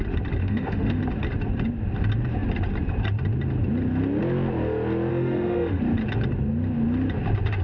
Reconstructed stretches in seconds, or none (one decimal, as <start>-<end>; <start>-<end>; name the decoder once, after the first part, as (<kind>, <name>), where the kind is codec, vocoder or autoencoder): 0.4-1.0 (autoencoder, DAC-VAE); 5.1-5.8